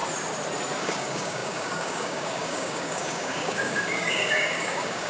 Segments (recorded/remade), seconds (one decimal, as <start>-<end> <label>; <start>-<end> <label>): 0.0-0.8 recorded; 0.8-5.1 remade